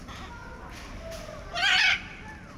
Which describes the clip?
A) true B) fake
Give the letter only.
A